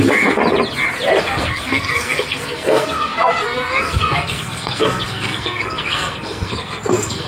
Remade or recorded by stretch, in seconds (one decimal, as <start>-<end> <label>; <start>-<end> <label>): 0.0-0.4 remade; 0.4-1.2 recorded; 1.2-7.3 remade